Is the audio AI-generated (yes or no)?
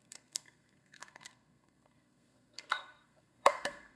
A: yes